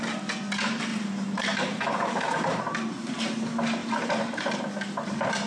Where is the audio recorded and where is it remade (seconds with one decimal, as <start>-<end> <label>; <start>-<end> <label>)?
0.0-0.9 recorded; 0.9-2.6 remade; 2.6-3.8 recorded; 3.8-4.6 remade; 4.6-5.5 recorded